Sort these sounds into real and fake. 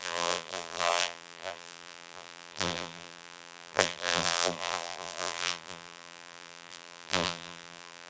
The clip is fake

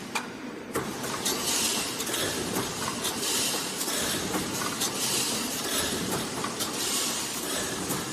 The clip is fake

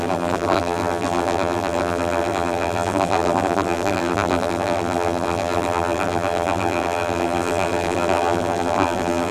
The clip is fake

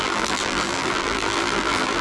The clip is fake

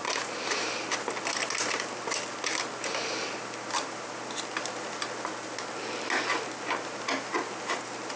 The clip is real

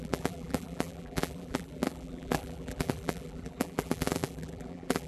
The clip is fake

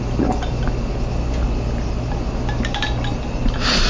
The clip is real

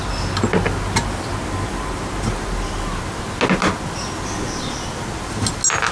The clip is real